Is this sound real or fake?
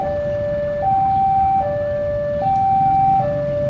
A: real